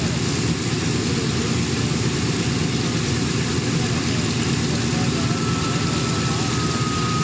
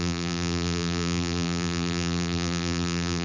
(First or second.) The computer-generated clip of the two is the second